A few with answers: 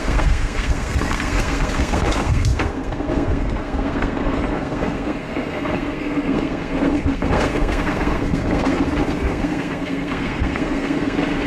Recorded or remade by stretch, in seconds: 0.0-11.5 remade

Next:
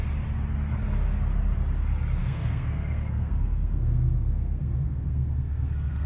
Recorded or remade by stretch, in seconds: 0.0-2.2 recorded; 2.2-6.1 remade

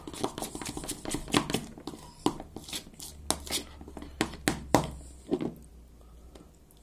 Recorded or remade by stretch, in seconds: 0.0-6.8 recorded